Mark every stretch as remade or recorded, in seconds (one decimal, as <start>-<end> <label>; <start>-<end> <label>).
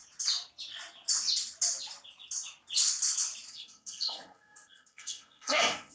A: 0.0-3.5 recorded; 3.5-5.9 remade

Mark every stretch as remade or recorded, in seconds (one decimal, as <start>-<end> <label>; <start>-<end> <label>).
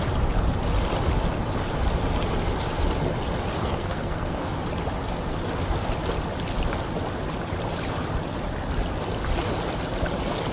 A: 0.0-3.6 recorded; 3.6-4.5 remade; 4.5-10.5 recorded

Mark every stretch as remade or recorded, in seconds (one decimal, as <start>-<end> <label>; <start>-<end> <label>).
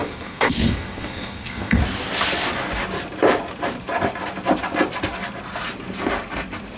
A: 0.0-1.8 remade; 1.8-6.8 recorded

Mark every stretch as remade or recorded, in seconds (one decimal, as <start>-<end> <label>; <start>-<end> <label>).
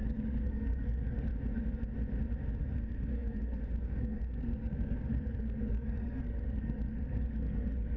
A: 0.0-1.3 remade; 1.3-2.6 recorded; 2.6-8.0 remade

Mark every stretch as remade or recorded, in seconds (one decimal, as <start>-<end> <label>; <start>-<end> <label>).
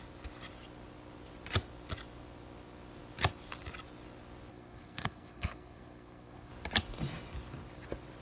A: 0.0-4.5 recorded; 4.5-6.5 remade; 6.5-8.2 recorded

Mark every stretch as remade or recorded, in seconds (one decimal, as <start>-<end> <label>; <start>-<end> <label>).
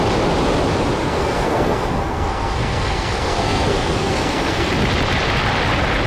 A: 0.0-1.0 recorded; 1.0-4.7 remade; 4.7-6.1 recorded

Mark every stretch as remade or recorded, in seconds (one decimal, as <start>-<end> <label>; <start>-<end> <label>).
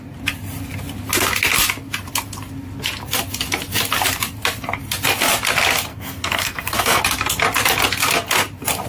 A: 0.0-5.9 recorded; 5.9-7.0 remade; 7.0-8.9 recorded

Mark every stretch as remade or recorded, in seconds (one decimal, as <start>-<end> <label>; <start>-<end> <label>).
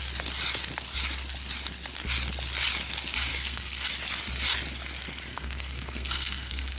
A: 0.0-3.3 recorded; 3.3-3.9 remade; 3.9-5.3 recorded; 5.3-6.8 remade